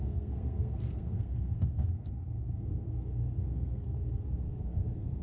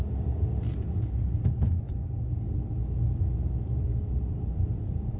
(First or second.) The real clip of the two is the second